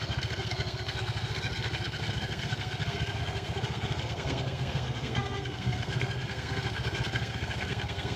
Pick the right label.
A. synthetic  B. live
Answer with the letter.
A